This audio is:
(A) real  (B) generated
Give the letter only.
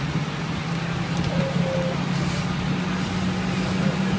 A